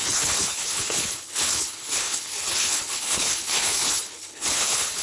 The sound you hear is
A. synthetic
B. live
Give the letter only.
A